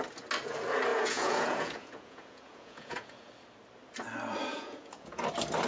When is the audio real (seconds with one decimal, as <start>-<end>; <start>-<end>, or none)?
0.0-0.9; 3.3-4.5; 5.2-5.7